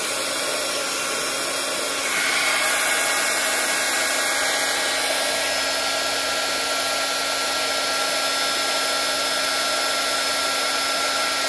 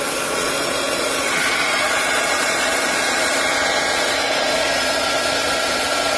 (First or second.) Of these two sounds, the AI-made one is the second